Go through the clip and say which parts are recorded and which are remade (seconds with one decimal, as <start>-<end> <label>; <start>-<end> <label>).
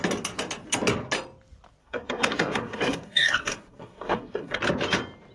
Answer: 0.0-1.8 recorded; 1.8-4.6 remade; 4.6-5.3 recorded